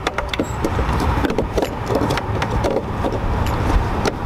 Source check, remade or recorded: remade